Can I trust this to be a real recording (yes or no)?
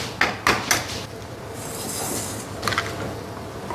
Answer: yes